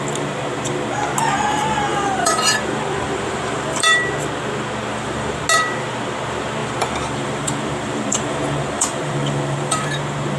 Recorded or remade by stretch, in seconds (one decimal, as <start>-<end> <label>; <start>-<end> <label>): 0.0-1.9 recorded; 1.9-4.1 remade; 4.1-4.9 recorded; 4.9-5.4 remade; 5.4-6.6 recorded; 6.6-9.9 remade; 9.9-10.4 recorded

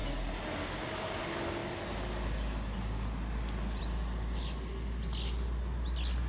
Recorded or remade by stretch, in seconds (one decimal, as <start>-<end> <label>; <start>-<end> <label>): 0.0-6.3 recorded

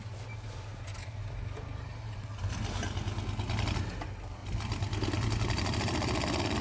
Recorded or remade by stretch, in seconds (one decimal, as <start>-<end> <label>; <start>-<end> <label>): 0.0-0.9 recorded; 0.9-2.4 remade; 2.4-4.4 recorded; 4.4-6.6 remade